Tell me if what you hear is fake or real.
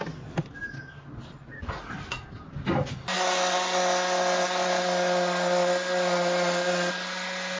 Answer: real